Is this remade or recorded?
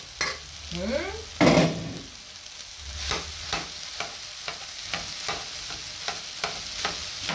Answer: recorded